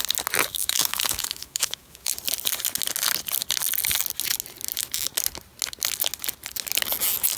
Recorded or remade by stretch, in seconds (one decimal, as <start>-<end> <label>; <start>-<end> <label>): 0.0-0.5 recorded; 0.5-2.1 remade; 2.1-7.4 recorded